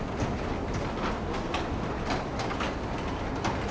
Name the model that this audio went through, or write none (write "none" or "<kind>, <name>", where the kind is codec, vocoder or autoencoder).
none